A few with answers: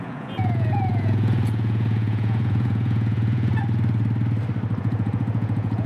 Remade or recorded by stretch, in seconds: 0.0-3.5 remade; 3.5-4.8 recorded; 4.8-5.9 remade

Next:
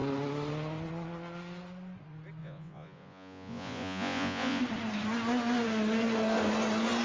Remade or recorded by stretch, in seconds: 0.0-2.4 recorded; 2.4-4.6 remade; 4.6-7.0 recorded